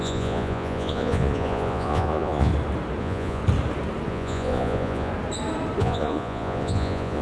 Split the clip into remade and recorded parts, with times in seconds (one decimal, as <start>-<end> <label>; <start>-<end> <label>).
0.0-2.5 remade; 2.5-3.0 recorded; 3.0-3.4 remade; 3.4-4.1 recorded; 4.1-5.1 remade; 5.1-5.8 recorded; 5.8-7.2 remade